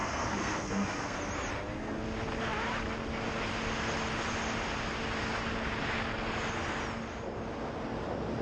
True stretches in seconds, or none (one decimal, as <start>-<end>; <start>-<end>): 1.2-8.4

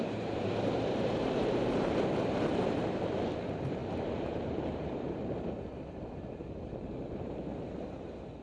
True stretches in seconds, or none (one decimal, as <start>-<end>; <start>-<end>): none

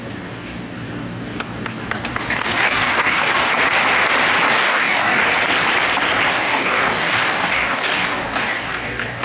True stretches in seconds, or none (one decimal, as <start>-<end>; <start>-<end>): 3.5-4.5; 5.2-6.3

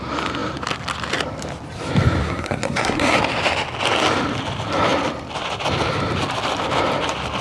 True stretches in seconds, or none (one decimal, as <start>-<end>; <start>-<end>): 0.0-2.2; 3.2-7.4

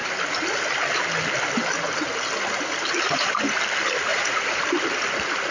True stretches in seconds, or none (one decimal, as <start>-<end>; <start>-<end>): 0.0-4.1; 4.6-5.5